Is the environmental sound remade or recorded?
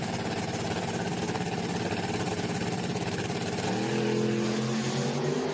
recorded